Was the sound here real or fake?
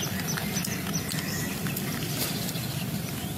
fake